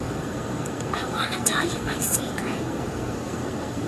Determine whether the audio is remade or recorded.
remade